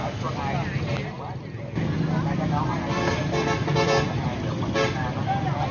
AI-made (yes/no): no